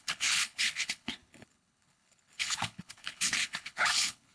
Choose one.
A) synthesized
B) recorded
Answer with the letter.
A